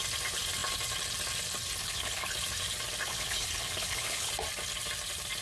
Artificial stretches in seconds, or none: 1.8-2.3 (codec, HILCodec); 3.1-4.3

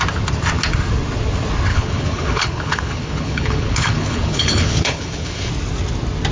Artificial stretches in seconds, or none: 1.7-5.5 (codec, HILCodec)

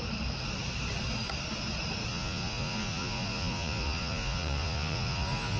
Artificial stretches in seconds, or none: 2.1-5.6 (vocoder, Vocos)

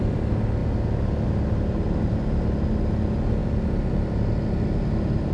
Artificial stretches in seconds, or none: none

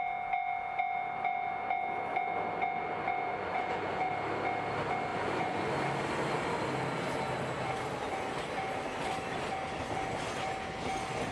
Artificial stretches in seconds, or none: 3.3-4.1 (vocoder, Vocos); 5.1-5.7